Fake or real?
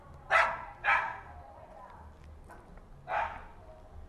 real